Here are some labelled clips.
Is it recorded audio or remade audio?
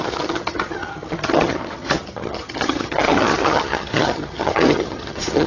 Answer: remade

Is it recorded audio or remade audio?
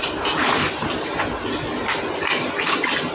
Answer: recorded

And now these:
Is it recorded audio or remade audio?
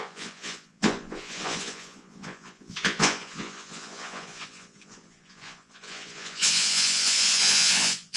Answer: remade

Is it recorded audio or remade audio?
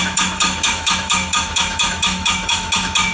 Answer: remade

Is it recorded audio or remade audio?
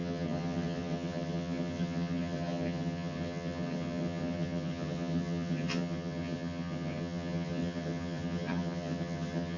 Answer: remade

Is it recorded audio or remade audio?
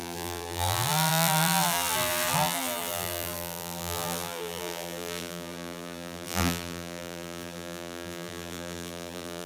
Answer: remade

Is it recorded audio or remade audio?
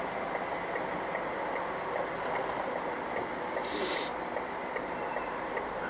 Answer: recorded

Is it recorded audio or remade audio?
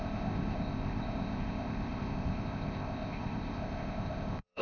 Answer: remade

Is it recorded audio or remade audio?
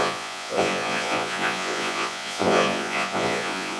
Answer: remade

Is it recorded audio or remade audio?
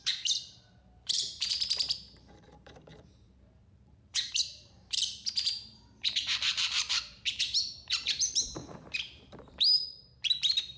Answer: remade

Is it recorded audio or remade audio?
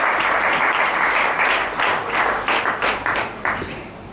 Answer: remade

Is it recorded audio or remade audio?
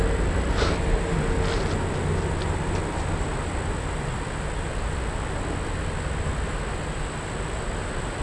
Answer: recorded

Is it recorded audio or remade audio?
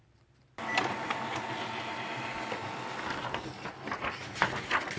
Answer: recorded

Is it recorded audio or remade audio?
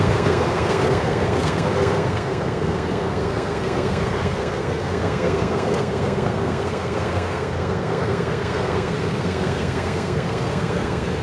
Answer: remade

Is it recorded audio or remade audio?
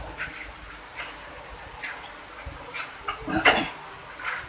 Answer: recorded